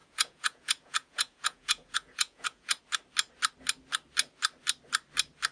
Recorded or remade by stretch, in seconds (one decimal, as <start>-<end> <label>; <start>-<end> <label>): 0.0-2.8 remade; 2.8-5.5 recorded